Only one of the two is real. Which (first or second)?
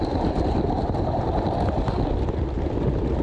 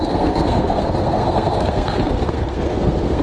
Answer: first